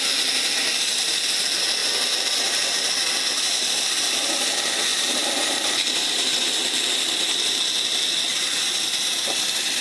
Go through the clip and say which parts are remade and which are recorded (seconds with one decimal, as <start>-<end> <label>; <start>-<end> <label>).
0.0-4.9 recorded; 4.9-6.3 remade; 6.3-8.3 recorded; 8.3-9.8 remade